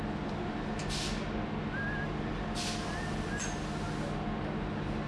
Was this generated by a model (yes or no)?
no